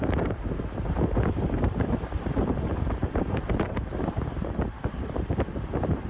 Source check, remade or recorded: remade